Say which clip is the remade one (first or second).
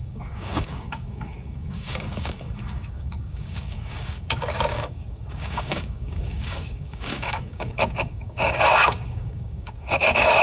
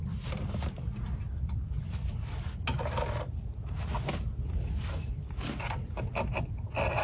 first